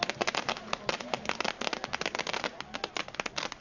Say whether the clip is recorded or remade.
recorded